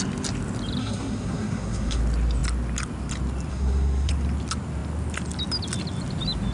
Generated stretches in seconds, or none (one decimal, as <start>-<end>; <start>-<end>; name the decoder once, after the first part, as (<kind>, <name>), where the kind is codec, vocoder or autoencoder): 0.8-2.0 (codec, SNAC); 3.5-4.1